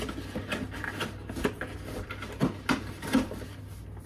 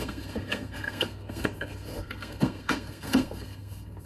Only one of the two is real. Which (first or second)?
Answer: first